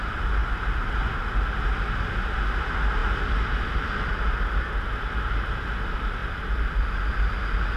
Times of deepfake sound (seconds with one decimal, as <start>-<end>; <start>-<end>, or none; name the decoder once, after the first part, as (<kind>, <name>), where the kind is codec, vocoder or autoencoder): none

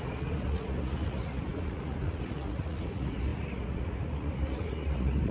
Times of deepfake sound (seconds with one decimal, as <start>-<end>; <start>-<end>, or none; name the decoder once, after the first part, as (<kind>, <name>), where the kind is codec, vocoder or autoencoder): 0.0-5.3 (vocoder, Vocos)

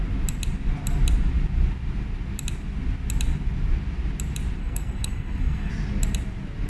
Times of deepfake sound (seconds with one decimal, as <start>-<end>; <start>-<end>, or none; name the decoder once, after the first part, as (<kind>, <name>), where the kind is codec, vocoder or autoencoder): 4.6-5.7 (codec, SNAC)

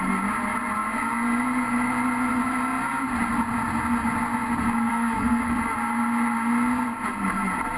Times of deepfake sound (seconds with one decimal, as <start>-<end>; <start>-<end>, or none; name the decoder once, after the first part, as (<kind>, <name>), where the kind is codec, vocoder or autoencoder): 4.9-5.5 (codec, SNAC)